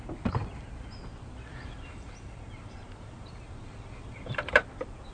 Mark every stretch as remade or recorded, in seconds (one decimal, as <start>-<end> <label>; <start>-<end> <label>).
0.0-1.5 recorded; 1.5-4.6 remade; 4.6-5.1 recorded

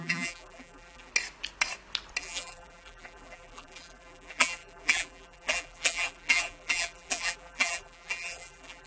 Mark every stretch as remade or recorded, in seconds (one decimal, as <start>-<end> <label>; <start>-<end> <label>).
0.0-1.1 remade; 1.1-2.2 recorded; 2.2-8.9 remade

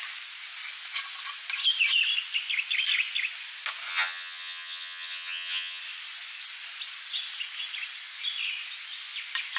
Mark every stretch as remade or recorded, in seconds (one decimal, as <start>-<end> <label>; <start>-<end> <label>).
0.0-3.9 recorded; 3.9-5.8 remade; 5.8-9.6 recorded

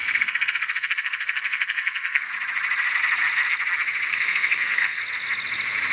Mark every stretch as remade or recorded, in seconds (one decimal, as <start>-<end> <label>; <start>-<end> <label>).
0.0-2.3 remade; 2.3-4.1 recorded; 4.1-5.0 remade; 5.0-5.9 recorded

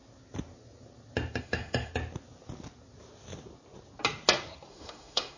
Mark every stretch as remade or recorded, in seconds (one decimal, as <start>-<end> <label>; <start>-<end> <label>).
0.0-1.4 recorded; 1.4-1.9 remade; 1.9-4.7 recorded; 4.7-5.4 remade

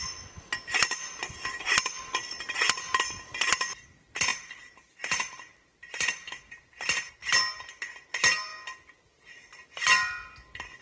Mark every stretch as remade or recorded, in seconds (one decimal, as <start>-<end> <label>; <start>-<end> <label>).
0.0-10.8 recorded

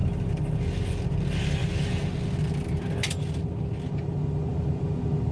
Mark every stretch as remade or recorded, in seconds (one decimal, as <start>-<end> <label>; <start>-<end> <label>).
0.0-5.3 recorded

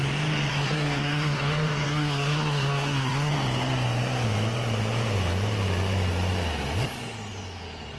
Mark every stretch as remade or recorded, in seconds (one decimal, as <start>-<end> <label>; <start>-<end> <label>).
0.0-0.5 recorded; 0.5-3.3 remade; 3.3-8.0 recorded